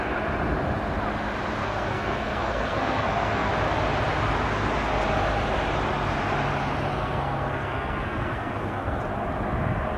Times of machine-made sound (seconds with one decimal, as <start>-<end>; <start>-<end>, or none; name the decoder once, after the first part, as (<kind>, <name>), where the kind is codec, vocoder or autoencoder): 1.6-3.5 (codec, SNAC); 6.9-9.0